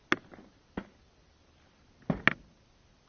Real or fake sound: real